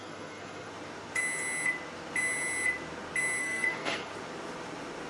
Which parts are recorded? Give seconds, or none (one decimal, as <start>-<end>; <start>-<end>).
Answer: 0.7-3.4; 4.1-5.1